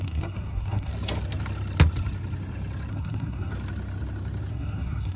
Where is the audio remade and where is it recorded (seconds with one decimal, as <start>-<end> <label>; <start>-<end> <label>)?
0.0-0.9 remade; 0.9-2.9 recorded; 2.9-3.5 remade; 3.5-4.5 recorded; 4.5-5.2 remade